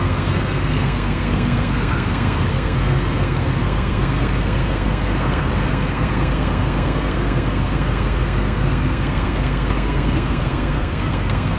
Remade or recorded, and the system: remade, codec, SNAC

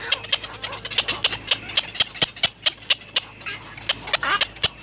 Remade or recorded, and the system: recorded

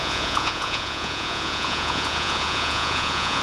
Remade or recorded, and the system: remade, vocoder, Vocos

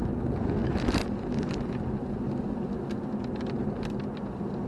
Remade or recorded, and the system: recorded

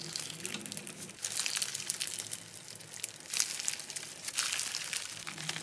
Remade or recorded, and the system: recorded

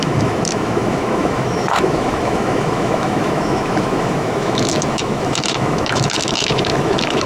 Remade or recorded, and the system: remade, autoencoder, DAC-VAE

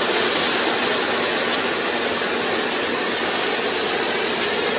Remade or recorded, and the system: recorded